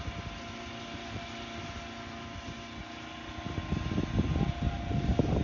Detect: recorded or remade recorded